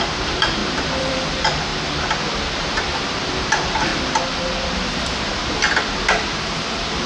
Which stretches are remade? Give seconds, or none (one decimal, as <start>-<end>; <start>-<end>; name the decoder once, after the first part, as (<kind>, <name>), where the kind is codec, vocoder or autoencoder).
0.0-1.7 (vocoder, BigVGAN v2); 2.5-3.9; 6.3-7.1